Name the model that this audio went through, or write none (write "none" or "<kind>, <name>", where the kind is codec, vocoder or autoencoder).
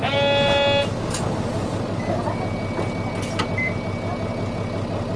none